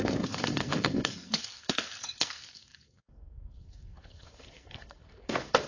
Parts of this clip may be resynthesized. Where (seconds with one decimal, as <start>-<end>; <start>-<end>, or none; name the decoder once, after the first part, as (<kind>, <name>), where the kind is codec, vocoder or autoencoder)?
0.0-5.7 (codec, SNAC)